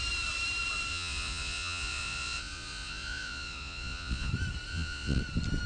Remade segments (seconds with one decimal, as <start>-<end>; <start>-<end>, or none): 0.9-4.3; 4.7-5.2